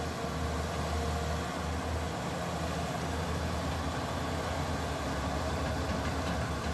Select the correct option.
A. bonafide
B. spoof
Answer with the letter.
A